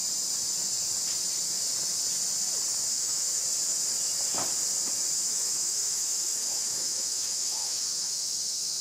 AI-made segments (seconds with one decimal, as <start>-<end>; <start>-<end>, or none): 2.9-3.4; 5.1-8.8